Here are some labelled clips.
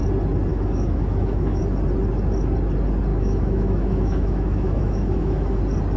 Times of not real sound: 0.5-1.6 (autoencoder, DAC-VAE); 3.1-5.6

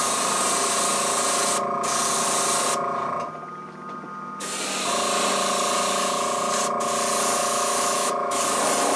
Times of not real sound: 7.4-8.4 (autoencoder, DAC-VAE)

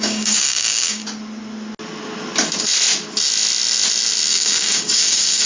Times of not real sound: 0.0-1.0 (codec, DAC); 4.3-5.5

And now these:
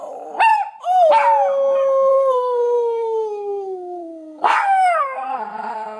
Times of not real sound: 2.1-6.0 (codec, SNAC)

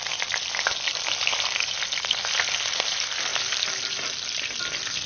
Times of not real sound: none